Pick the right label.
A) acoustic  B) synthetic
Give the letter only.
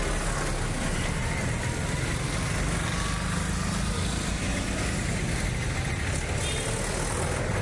A